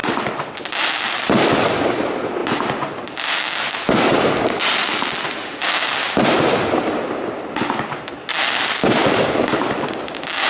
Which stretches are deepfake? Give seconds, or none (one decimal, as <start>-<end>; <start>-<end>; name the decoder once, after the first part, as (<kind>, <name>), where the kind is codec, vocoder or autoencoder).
5.6-7.0 (vocoder, BigVGAN v2); 8.3-10.5